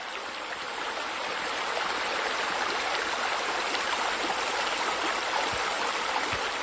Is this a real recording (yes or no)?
yes